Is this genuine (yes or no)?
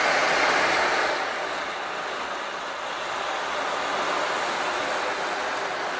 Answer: yes